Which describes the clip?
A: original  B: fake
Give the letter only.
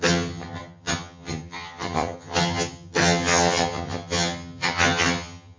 B